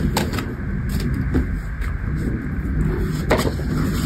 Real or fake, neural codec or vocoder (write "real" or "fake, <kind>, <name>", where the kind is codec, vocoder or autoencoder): real